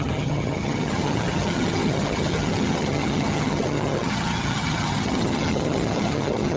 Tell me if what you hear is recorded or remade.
remade